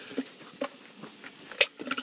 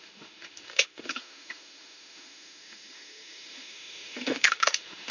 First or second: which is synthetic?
second